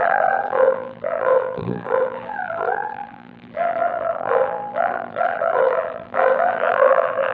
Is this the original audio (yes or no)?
no